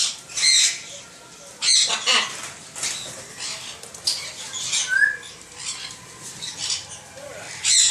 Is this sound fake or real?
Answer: real